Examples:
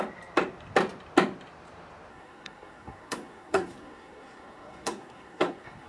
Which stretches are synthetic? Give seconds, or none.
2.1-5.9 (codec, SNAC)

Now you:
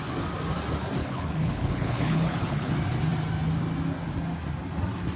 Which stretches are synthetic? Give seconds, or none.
1.0-2.7 (codec, HILCodec)

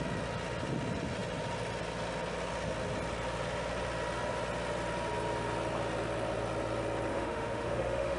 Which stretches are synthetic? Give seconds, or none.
7.1-8.2 (autoencoder, DAC-VAE)

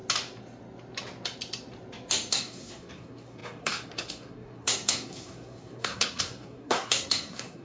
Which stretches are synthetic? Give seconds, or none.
2.3-7.6 (codec, SNAC)

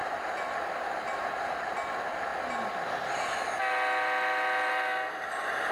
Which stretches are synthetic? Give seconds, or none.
0.0-1.4 (vocoder, BigVGAN v2)

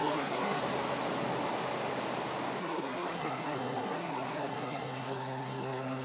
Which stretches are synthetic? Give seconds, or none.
0.0-0.6 (codec, SNAC); 2.6-6.0

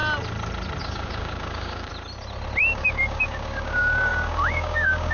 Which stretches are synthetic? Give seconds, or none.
0.8-1.9 (codec, DAC); 2.6-5.1

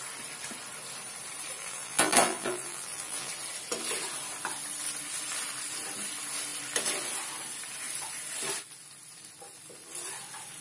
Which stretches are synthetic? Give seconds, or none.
1.6-3.3 (vocoder, BigVGAN v2)